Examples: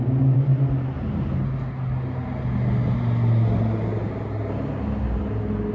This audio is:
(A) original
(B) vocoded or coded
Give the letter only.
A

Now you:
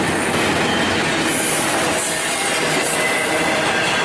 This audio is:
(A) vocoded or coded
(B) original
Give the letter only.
B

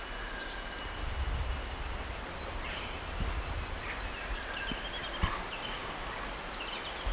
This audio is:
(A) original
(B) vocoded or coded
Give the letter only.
A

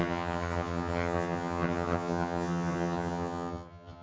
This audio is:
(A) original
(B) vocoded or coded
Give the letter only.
B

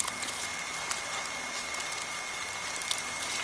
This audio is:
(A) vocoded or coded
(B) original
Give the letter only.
B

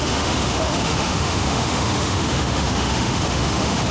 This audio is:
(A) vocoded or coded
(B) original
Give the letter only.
A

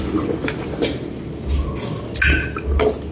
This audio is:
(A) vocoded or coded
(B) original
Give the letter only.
B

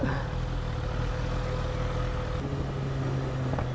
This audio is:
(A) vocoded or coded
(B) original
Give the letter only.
B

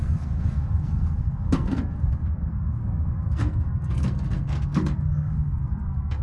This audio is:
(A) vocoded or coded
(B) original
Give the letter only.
A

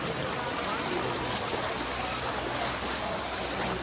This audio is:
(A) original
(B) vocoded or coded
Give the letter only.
A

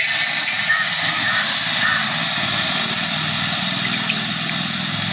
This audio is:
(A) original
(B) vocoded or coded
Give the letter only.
A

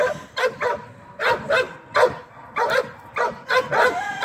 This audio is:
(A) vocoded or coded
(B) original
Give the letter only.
B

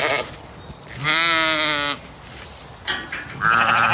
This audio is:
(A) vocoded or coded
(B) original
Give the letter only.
B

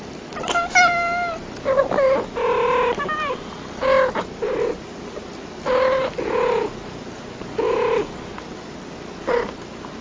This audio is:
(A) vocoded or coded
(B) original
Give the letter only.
B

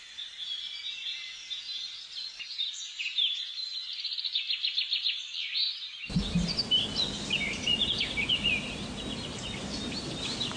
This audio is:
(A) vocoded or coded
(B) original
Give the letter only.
B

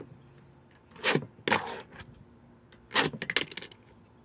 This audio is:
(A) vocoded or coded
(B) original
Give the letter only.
B